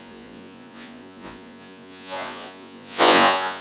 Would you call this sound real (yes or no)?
no